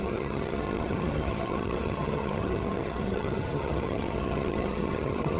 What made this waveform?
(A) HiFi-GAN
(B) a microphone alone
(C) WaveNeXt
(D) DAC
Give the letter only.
A